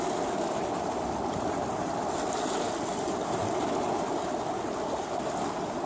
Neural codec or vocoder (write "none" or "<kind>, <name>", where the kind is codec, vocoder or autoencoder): none